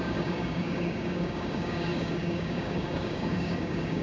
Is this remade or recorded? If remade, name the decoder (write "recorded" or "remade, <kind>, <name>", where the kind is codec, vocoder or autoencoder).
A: remade, codec, DAC